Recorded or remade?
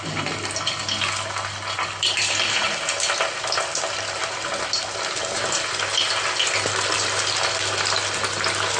recorded